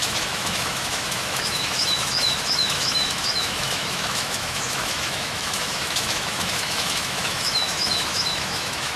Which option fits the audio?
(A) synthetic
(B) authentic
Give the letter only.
A